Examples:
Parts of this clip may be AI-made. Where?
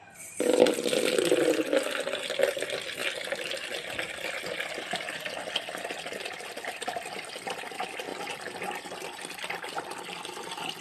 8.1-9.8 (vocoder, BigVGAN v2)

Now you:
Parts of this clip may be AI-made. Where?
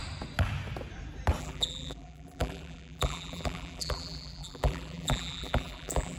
1.4-6.2 (vocoder, BigVGAN v2)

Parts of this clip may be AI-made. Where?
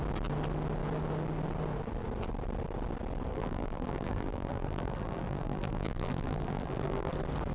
3.3-7.1 (vocoder, BigVGAN v2)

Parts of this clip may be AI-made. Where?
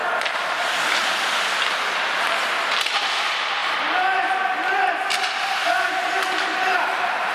3.6-4.4 (vocoder, BigVGAN v2)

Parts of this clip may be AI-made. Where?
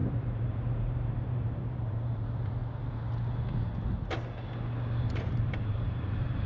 0.0-2.6 (vocoder, BigVGAN v2); 5.0-6.5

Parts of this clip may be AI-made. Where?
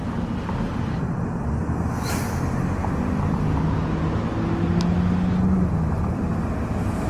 0.0-0.8 (vocoder, BigVGAN v2)